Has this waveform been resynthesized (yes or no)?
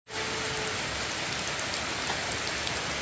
no